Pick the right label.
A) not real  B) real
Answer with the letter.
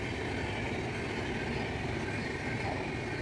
B